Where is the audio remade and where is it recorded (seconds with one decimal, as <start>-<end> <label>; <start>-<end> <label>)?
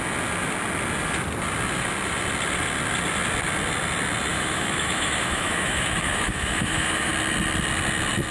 0.0-4.3 recorded; 4.3-7.1 remade; 7.1-8.3 recorded